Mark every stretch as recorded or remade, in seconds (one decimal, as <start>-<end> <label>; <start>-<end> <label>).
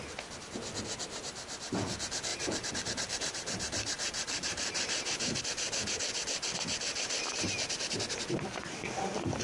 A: 0.0-2.3 recorded; 2.3-5.4 remade; 5.4-9.4 recorded